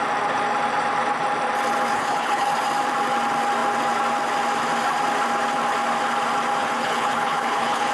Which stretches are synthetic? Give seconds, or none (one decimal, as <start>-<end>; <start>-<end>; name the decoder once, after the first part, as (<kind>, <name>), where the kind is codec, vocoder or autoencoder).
1.9-2.5 (codec, HILCodec); 6.6-7.9